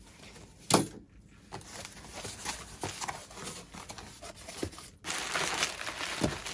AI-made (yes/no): no